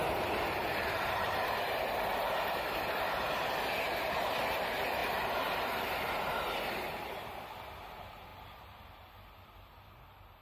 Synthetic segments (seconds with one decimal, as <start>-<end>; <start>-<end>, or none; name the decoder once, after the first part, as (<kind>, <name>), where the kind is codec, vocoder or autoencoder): 0.6-1.5 (vocoder, BigVGAN v2); 8.3-9.1

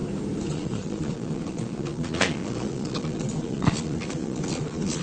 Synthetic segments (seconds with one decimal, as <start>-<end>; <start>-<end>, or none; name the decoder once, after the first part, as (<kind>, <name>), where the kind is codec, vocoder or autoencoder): 0.5-5.0 (vocoder, Vocos)

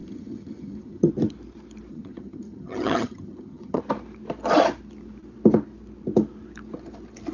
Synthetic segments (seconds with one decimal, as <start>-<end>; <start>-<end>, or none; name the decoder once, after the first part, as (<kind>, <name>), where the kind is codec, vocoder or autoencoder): 0.0-1.1 (vocoder, HiFi-GAN); 1.9-3.8

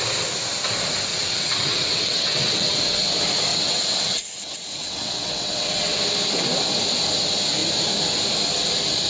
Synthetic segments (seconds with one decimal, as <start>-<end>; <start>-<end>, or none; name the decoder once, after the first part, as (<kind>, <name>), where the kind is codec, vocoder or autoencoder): 1.1-3.1 (vocoder, WaveNeXt); 3.5-6.0

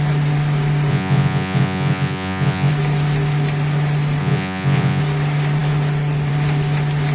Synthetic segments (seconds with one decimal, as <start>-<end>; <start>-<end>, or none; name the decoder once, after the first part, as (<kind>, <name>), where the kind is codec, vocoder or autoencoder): 0.9-2.7 (vocoder, Vocos); 4.2-5.0

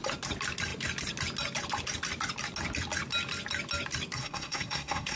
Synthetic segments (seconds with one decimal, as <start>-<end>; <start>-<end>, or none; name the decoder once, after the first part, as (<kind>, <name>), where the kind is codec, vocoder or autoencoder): 4.2-5.2 (codec, SNAC)

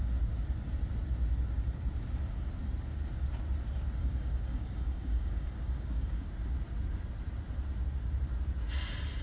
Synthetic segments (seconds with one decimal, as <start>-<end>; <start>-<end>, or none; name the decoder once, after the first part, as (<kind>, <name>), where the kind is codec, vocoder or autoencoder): 4.0-6.3 (codec, DAC)

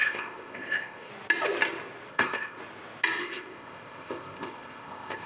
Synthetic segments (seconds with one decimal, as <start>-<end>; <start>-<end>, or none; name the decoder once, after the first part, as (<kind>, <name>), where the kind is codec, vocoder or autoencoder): 0.0-1.1 (codec, ZipCodec); 2.1-2.6; 3.2-5.3